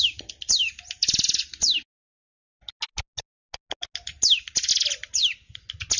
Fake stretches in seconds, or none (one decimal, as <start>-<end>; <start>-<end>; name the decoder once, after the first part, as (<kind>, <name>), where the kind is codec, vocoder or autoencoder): none